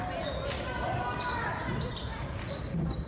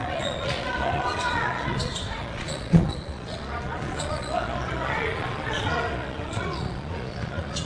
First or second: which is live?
first